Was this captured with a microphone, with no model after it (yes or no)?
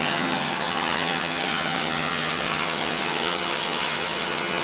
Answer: no